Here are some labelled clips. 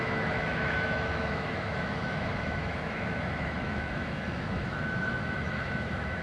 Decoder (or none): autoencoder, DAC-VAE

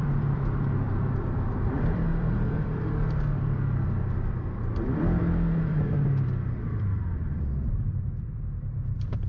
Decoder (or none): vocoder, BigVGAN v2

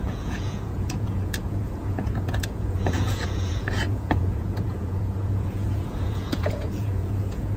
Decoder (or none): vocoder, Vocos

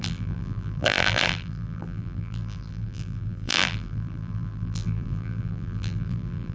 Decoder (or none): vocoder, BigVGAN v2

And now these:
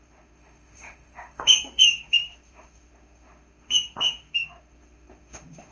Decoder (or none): autoencoder, DAC-VAE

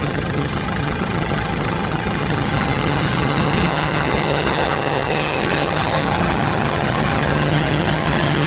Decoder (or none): vocoder, HiFi-GAN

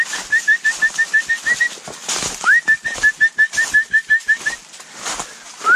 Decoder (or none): none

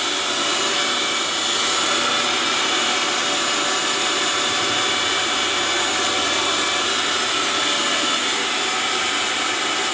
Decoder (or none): none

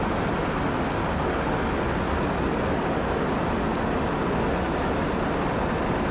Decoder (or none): none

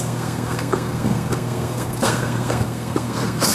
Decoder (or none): codec, SNAC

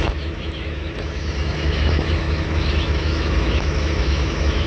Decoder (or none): autoencoder, DAC-VAE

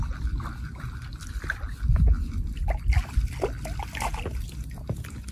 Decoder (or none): none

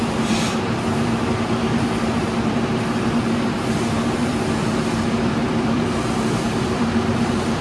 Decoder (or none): vocoder, BigVGAN v2